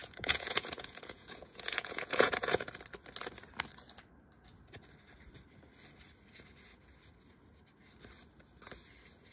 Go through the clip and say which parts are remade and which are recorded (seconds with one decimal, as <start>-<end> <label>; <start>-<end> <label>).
0.0-2.7 remade; 2.7-9.3 recorded